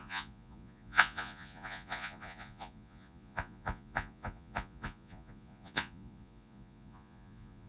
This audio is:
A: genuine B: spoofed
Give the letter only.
B